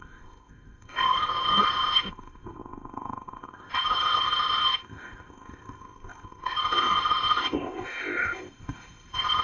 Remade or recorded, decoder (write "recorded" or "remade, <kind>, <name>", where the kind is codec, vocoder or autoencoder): remade, codec, ZipCodec